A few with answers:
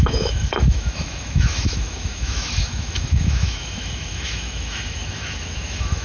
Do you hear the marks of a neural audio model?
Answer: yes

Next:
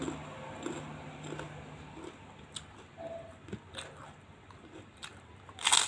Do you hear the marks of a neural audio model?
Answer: no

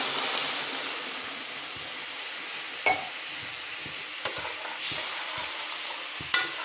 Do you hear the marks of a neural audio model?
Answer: no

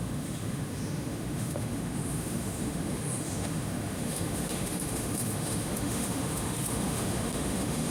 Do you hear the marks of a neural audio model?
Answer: yes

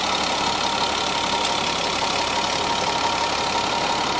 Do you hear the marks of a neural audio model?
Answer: no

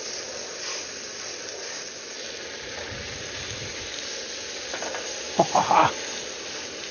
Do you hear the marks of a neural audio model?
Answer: no